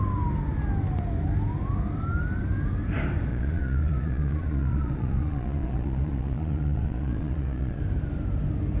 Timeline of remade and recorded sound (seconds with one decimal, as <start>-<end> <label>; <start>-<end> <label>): 0.0-3.3 recorded; 3.3-7.8 remade; 7.8-8.8 recorded